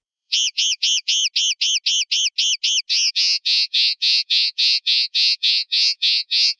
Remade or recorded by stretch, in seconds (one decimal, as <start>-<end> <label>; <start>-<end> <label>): 0.0-1.2 remade; 1.2-3.1 recorded; 3.1-6.6 remade